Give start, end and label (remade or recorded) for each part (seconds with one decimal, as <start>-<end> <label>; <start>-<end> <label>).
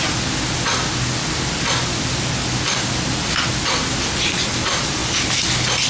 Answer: 0.0-5.9 recorded